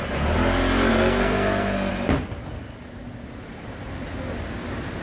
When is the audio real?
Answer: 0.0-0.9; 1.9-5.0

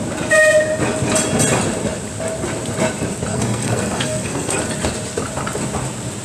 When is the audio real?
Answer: 0.0-3.3; 4.6-6.2

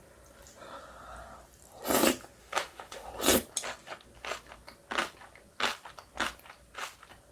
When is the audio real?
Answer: 0.0-2.4; 3.1-7.3

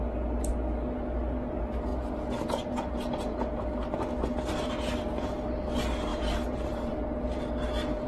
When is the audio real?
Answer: 0.0-8.1

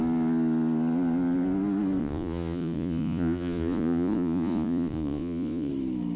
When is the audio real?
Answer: 0.0-2.0; 5.7-6.2

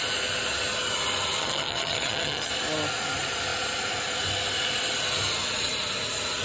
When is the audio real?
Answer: 0.0-1.4; 2.5-6.4